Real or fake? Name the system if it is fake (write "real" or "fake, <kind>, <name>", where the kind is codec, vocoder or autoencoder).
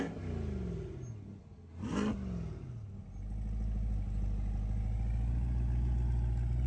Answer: real